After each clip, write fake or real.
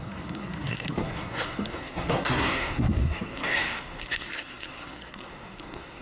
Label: fake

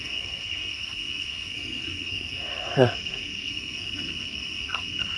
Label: fake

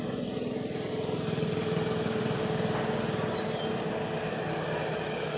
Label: real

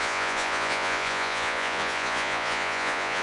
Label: fake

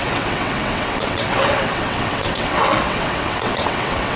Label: fake